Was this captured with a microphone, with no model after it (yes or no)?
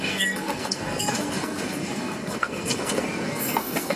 no